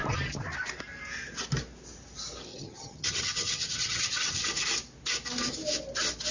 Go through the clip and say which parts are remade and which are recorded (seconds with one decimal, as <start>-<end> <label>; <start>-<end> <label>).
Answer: 0.0-2.5 recorded; 2.5-4.5 remade; 4.5-6.3 recorded